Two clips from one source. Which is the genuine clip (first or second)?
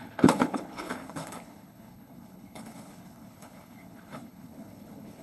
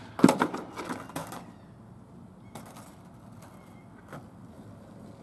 second